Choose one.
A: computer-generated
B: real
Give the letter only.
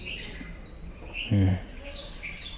A